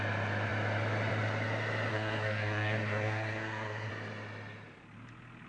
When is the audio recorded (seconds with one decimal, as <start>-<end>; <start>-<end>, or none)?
0.0-1.9; 3.9-5.5